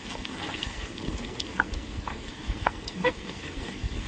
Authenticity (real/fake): fake